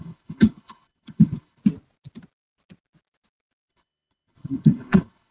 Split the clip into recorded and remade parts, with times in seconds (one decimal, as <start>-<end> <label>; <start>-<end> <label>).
0.0-1.6 remade; 1.6-3.7 recorded; 3.7-5.3 remade